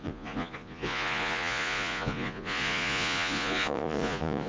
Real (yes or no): no